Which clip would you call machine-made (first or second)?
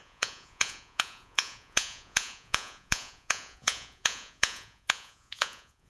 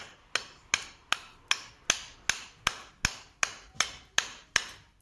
first